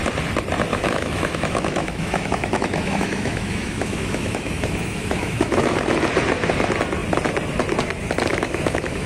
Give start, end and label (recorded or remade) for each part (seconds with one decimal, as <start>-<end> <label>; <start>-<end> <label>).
0.0-0.7 recorded; 0.7-5.9 remade; 5.9-8.3 recorded; 8.3-9.1 remade